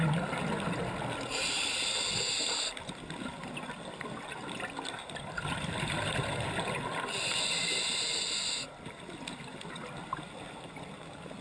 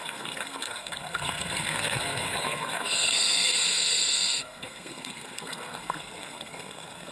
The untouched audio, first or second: first